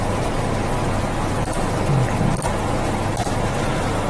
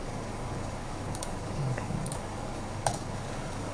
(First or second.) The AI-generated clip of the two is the second